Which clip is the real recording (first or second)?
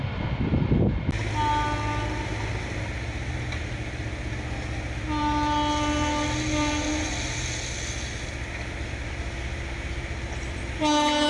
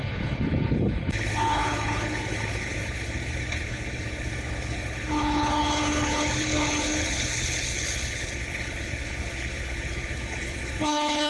first